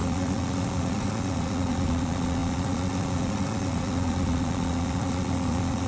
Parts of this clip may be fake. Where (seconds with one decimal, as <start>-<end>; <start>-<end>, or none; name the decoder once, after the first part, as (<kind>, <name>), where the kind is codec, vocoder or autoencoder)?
0.0-5.9 (vocoder, Vocos)